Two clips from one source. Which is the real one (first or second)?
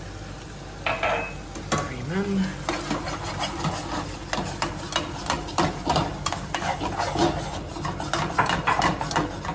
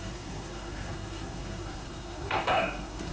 first